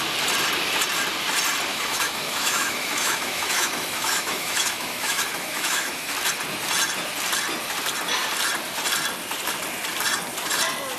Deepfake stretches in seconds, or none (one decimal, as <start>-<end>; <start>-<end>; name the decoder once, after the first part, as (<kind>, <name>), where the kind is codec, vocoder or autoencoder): 1.7-6.1 (autoencoder, DAC-VAE)